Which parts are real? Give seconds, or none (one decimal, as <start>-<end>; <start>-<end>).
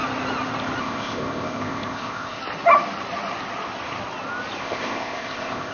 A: 0.0-0.8; 2.4-4.6